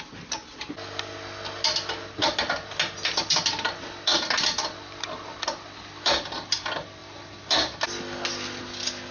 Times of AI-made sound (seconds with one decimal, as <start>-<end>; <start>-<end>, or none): none